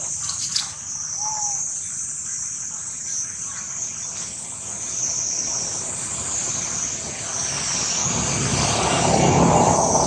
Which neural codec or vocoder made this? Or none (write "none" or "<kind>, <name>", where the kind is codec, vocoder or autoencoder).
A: none